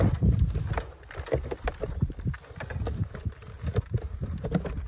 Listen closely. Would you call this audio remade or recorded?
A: recorded